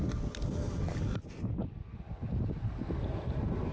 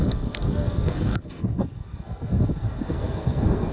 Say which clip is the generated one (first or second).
second